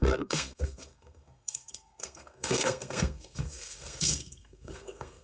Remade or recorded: remade